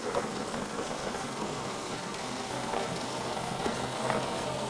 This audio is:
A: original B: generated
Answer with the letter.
B